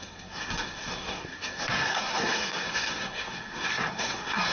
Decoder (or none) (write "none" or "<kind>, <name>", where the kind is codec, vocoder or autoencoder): codec, SNAC